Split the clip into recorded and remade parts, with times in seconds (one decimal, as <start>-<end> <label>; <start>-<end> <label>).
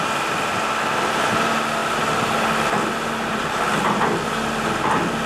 0.0-5.3 recorded